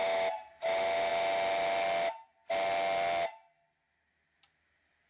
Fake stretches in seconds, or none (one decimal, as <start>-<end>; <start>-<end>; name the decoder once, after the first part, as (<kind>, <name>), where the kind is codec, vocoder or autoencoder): none